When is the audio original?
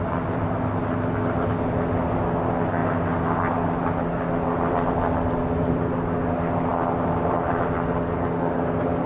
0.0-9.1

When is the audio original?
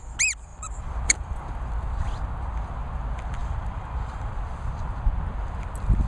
0.0-0.5; 1.7-3.4; 4.3-6.1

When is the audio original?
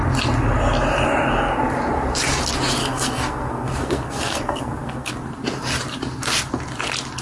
0.0-2.8; 5.1-7.2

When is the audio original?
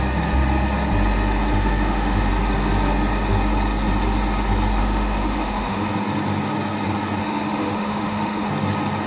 0.0-1.5; 2.3-4.8; 5.9-7.2; 8.5-9.1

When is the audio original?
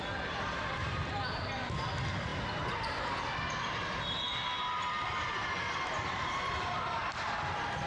0.0-7.9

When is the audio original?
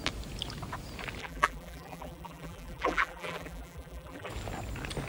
0.0-1.2; 4.3-5.1